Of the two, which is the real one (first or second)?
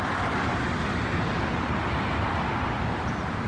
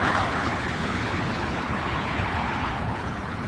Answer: first